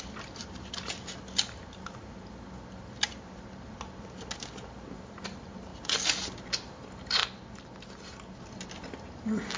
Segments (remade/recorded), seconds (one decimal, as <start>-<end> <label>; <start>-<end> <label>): 0.0-9.6 recorded